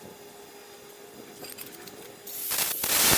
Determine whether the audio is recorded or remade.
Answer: recorded